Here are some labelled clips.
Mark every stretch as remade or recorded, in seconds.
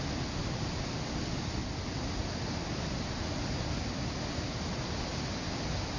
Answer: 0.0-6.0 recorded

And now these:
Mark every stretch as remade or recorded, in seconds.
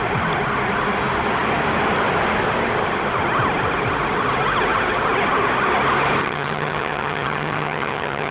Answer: 0.0-6.2 recorded; 6.2-8.3 remade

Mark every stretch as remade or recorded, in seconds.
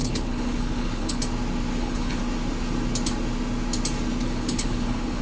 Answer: 0.0-1.2 remade; 1.2-1.8 recorded; 1.8-2.2 remade; 2.2-4.2 recorded; 4.2-5.2 remade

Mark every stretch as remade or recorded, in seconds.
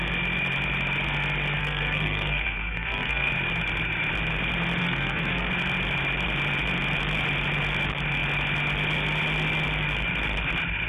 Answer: 0.0-1.6 recorded; 1.6-3.3 remade; 3.3-4.8 recorded; 4.8-5.5 remade; 5.5-10.9 recorded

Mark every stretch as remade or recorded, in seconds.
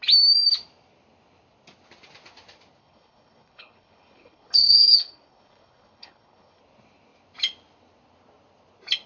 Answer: 0.0-2.8 recorded; 2.8-6.6 remade; 6.6-9.1 recorded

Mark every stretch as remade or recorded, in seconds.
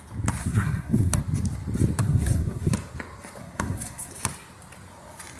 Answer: 0.0-0.4 recorded; 0.4-1.2 remade; 1.2-2.0 recorded; 2.0-2.7 remade; 2.7-3.4 recorded; 3.4-4.1 remade; 4.1-5.4 recorded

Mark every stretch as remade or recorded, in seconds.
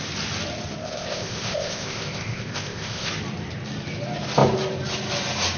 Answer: 0.0-0.8 recorded; 0.8-3.1 remade; 3.1-5.6 recorded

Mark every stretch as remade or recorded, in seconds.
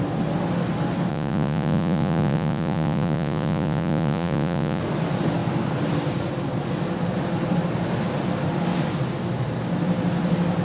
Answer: 0.0-1.1 recorded; 1.1-4.8 remade; 4.8-10.6 recorded